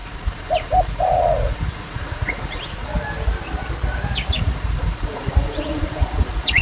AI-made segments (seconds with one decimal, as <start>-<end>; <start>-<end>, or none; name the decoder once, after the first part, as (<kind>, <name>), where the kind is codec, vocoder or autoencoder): 0.0-2.9 (vocoder, Vocos); 4.3-6.6